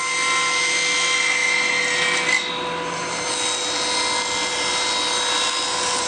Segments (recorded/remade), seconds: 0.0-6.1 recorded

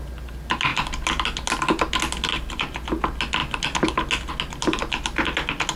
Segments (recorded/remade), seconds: 0.0-5.8 recorded

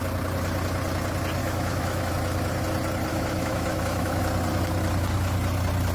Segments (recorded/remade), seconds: 0.0-1.4 recorded; 1.4-2.1 remade; 2.1-3.1 recorded; 3.1-4.2 remade; 4.2-5.9 recorded

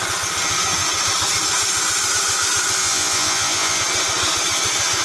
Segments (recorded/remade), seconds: 0.0-2.8 recorded; 2.8-3.8 remade; 3.8-5.0 recorded

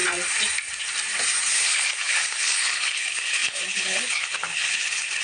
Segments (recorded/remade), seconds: 0.0-1.5 recorded; 1.5-5.2 remade